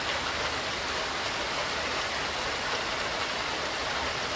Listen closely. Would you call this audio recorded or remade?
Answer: recorded